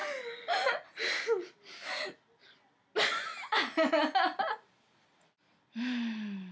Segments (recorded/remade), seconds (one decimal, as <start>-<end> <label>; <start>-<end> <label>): 0.0-6.5 recorded